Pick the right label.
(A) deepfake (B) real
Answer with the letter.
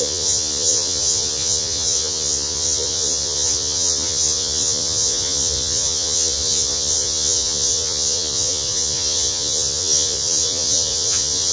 A